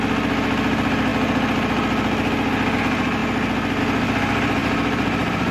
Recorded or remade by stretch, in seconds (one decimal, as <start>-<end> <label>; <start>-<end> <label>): 0.0-4.6 recorded; 4.6-5.5 remade